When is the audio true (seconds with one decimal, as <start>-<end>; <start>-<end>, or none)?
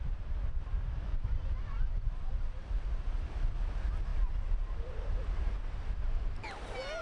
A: 0.0-1.1; 2.1-7.0